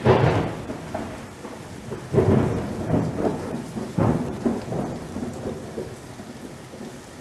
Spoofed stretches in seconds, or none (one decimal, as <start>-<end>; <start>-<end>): 3.3-4.6